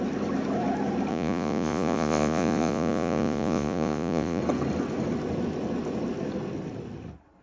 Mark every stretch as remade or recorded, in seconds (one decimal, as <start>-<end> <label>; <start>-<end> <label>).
0.0-1.1 recorded; 1.1-4.4 remade; 4.4-7.4 recorded